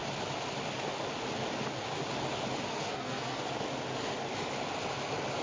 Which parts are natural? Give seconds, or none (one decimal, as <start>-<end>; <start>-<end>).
0.0-2.7; 3.4-5.4